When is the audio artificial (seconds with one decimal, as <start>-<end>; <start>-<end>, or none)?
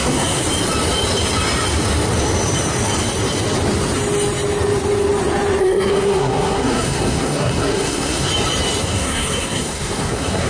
0.0-0.4; 5.6-8.3; 8.8-10.5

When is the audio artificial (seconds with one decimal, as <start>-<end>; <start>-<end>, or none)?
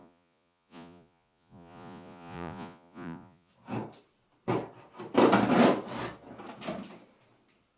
0.0-3.5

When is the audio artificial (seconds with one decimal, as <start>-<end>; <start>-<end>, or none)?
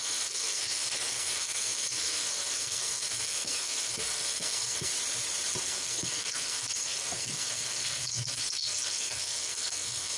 0.0-4.9; 5.6-10.2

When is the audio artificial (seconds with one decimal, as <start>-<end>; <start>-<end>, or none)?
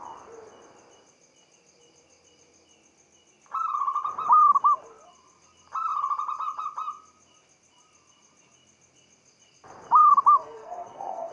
10.4-11.3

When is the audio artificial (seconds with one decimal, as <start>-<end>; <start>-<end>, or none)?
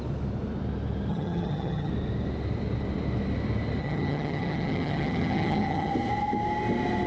1.1-1.9; 3.8-5.9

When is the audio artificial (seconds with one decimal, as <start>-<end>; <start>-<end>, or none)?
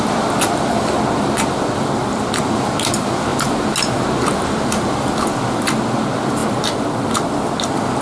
none